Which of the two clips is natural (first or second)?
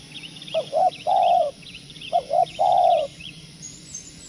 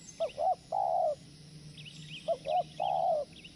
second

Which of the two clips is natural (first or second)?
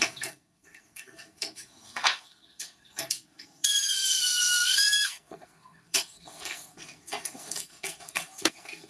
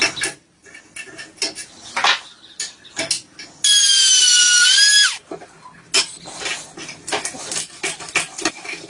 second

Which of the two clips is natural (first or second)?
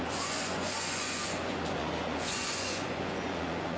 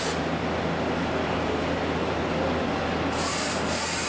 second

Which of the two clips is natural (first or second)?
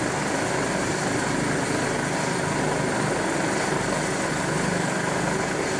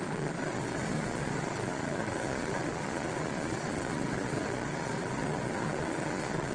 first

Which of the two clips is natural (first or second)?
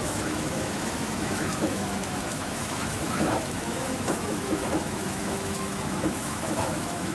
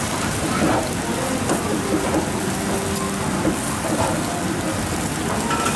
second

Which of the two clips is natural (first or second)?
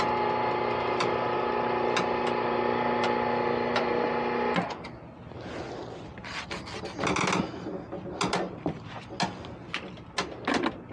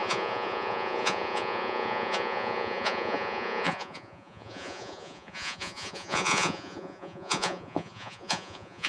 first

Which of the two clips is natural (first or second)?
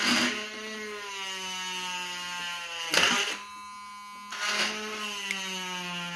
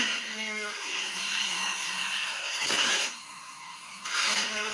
first